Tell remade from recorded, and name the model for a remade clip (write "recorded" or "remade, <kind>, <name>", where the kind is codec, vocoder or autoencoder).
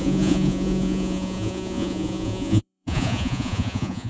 remade, vocoder, Vocos